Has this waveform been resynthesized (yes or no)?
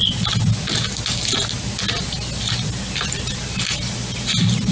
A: no